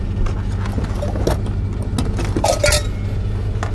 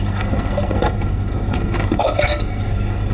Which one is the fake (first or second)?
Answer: second